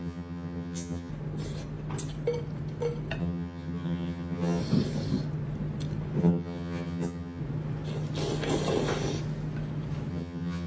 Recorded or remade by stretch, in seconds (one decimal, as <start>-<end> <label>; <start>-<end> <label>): 0.0-1.1 remade; 1.1-3.2 recorded; 3.2-4.6 remade; 4.6-6.2 recorded; 6.2-7.4 remade; 7.4-10.1 recorded; 10.1-10.7 remade